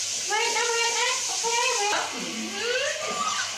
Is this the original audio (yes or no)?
yes